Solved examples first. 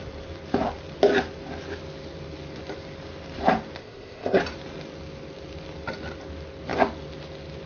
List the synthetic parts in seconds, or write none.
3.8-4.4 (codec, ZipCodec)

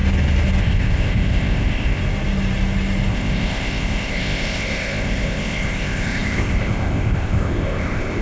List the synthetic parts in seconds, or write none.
0.6-2.0 (codec, ZipCodec); 3.1-8.2

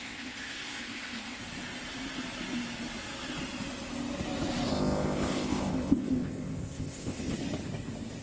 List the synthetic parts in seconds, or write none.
0.0-1.4 (codec, ZipCodec); 4.7-7.3

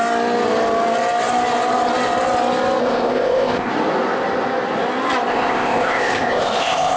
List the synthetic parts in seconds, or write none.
2.8-3.7 (codec, ZipCodec); 5.3-7.0

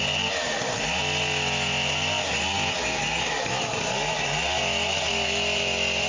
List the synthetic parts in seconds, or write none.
none

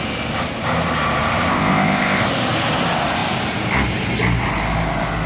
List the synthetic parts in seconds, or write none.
1.5-2.2 (codec, ZipCodec)

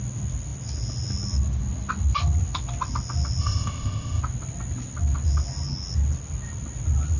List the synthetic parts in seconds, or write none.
3.4-4.2 (codec, ZipCodec)